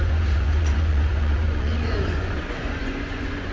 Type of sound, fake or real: fake